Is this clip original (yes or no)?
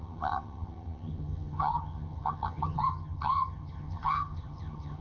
no